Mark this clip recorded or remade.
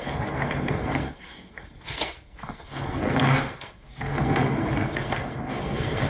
remade